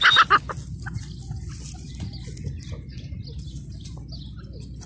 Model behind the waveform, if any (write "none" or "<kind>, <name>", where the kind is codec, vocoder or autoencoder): none